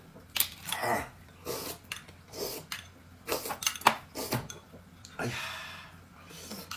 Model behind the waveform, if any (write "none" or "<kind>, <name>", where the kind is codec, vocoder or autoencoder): none